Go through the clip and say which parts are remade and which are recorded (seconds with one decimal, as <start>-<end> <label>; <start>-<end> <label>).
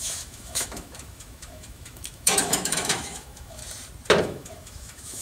0.0-3.6 remade; 3.6-4.2 recorded; 4.2-5.2 remade